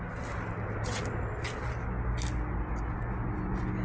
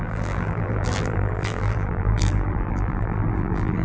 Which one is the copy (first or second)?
second